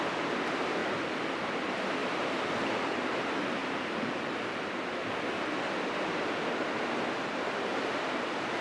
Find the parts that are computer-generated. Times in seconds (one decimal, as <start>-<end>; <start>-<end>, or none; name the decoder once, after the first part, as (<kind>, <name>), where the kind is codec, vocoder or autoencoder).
0.8-1.4 (vocoder, BigVGAN v2); 3.6-5.1; 7.7-8.6

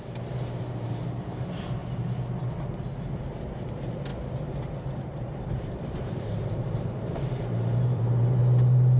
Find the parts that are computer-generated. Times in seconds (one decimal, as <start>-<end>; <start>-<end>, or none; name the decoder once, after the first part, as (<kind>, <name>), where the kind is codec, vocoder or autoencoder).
0.0-1.8 (vocoder, BigVGAN v2); 3.2-4.1; 5.4-8.4

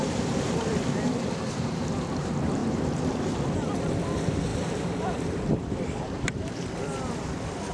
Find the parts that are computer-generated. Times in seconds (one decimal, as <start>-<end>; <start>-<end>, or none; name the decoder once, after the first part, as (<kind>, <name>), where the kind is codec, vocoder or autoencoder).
0.0-7.7 (vocoder, BigVGAN v2)

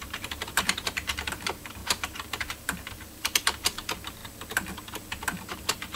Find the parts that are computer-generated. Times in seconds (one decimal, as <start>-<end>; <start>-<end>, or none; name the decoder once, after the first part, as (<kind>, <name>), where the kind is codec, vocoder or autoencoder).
0.0-4.2 (vocoder, BigVGAN v2); 5.5-6.0

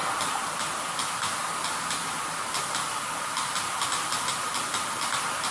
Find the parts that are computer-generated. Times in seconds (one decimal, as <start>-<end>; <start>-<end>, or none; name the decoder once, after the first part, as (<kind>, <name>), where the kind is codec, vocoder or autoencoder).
none

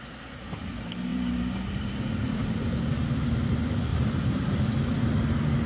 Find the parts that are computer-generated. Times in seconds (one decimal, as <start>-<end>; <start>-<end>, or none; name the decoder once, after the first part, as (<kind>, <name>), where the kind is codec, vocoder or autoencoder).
1.1-3.5 (vocoder, BigVGAN v2); 3.9-4.6